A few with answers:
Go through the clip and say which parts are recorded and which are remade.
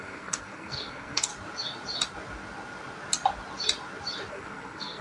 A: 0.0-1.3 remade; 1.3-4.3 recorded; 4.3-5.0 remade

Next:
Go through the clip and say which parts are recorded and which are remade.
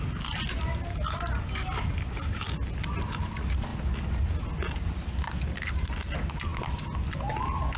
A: 0.0-7.8 recorded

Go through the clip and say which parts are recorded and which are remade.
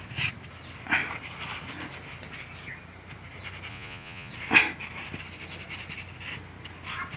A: 0.0-3.7 recorded; 3.7-4.3 remade; 4.3-7.2 recorded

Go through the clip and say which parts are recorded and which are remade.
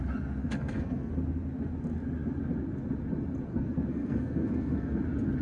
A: 0.0-0.4 recorded; 0.4-1.1 remade; 1.1-3.5 recorded; 3.5-5.0 remade; 5.0-5.4 recorded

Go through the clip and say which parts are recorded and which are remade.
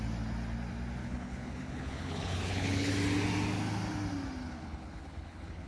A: 0.0-1.0 recorded; 1.0-2.9 remade; 2.9-4.4 recorded; 4.4-5.7 remade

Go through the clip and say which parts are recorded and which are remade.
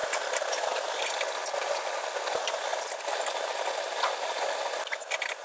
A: 0.0-5.4 recorded